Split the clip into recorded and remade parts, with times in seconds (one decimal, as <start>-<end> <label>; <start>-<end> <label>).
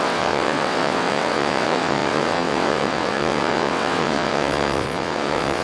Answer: 0.0-5.6 remade